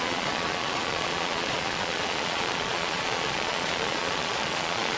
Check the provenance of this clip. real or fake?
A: fake